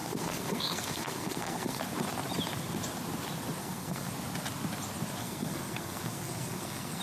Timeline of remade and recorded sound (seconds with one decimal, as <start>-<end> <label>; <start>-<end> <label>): 0.0-1.8 remade; 1.8-3.6 recorded; 3.6-4.1 remade; 4.1-5.2 recorded; 5.2-7.0 remade